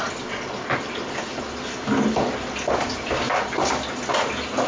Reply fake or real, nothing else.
real